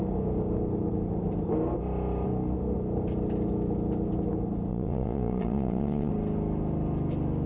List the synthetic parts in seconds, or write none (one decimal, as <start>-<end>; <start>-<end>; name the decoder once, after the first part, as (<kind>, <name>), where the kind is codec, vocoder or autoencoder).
4.7-6.1 (vocoder, Vocos)